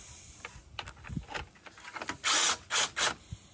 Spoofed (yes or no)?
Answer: no